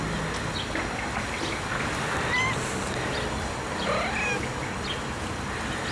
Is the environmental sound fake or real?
real